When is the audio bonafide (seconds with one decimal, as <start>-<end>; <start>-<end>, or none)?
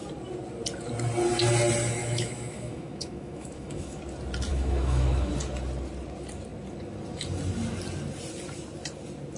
0.0-2.0; 4.0-4.5; 5.3-9.4